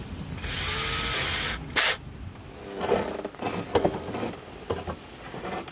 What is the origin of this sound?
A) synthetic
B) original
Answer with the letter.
B